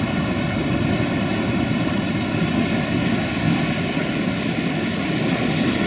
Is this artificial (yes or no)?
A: no